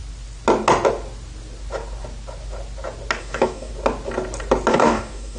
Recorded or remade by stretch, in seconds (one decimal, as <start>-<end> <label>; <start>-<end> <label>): 0.0-3.2 recorded; 3.2-3.7 remade; 3.7-4.7 recorded; 4.7-5.4 remade